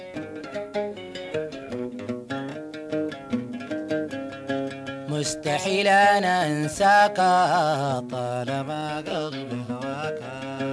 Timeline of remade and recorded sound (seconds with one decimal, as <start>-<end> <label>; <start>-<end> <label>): 0.0-0.4 recorded; 0.4-1.9 remade; 1.9-9.1 recorded; 9.1-9.7 remade; 9.7-10.7 recorded